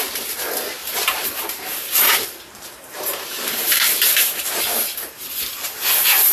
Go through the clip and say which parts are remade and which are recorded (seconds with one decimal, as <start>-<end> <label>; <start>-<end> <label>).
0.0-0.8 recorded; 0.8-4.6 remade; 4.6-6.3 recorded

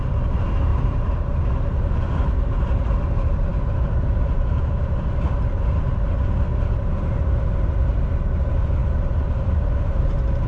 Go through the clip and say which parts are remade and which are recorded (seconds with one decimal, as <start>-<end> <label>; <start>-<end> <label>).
0.0-0.7 recorded; 0.7-1.4 remade; 1.4-10.5 recorded

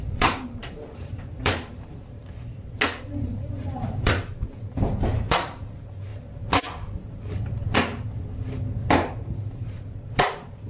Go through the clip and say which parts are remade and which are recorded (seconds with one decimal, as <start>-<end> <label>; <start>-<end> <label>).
0.0-2.2 remade; 2.2-3.2 recorded; 3.2-6.1 remade; 6.1-8.9 recorded; 8.9-10.7 remade

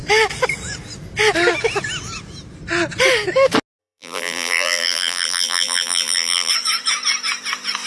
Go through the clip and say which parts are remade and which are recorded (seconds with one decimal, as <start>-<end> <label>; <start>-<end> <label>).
0.0-3.8 recorded; 3.8-6.5 remade; 6.5-7.9 recorded

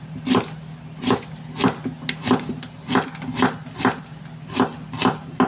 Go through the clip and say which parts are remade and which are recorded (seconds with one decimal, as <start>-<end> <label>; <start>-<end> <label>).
0.0-1.0 recorded; 1.0-2.9 remade; 2.9-5.5 recorded

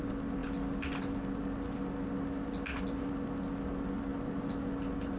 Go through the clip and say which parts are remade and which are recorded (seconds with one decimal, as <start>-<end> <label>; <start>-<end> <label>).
0.0-5.2 recorded